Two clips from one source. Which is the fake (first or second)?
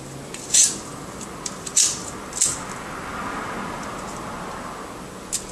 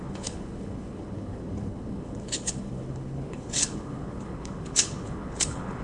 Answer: second